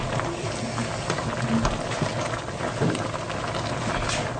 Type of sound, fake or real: real